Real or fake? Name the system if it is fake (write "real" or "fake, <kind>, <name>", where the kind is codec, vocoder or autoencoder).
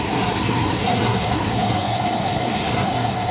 fake, codec, SNAC